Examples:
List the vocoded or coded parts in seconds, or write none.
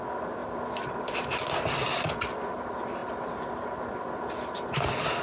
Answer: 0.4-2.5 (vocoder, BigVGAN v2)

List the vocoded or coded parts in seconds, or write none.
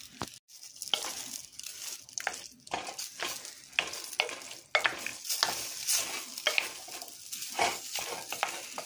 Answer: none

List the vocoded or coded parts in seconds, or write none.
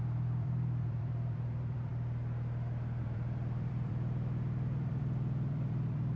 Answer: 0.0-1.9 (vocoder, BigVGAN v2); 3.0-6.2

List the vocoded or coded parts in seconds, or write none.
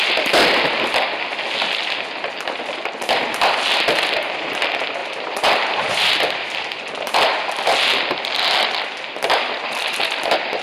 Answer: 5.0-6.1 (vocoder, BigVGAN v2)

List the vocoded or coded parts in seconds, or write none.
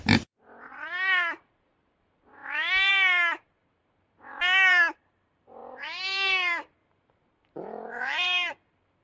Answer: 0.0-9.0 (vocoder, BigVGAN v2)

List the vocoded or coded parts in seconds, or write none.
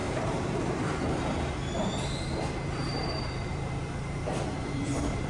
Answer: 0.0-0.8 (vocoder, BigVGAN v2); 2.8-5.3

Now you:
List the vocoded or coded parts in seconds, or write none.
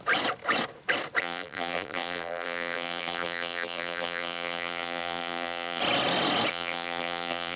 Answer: 1.2-5.8 (vocoder, BigVGAN v2); 6.5-7.6